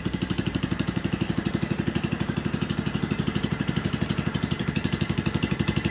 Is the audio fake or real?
fake